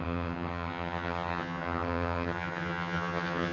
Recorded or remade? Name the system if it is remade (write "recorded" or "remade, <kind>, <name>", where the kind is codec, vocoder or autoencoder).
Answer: remade, vocoder, HiFi-GAN